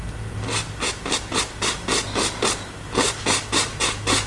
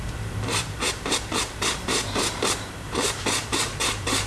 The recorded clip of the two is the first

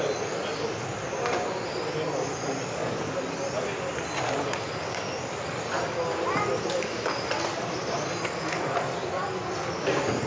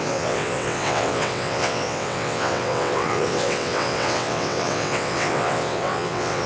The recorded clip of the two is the first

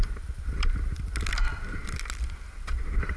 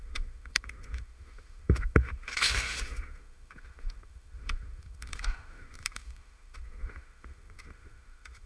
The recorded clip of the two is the first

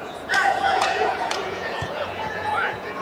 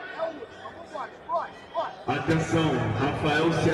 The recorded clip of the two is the second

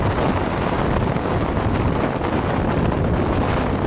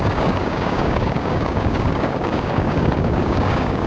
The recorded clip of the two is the first